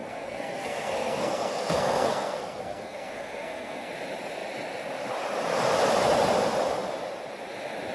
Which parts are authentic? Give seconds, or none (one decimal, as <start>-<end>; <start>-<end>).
3.9-7.9